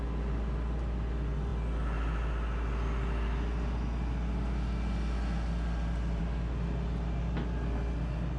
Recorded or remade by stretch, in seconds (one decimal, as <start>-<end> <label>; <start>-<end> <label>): 0.0-8.4 recorded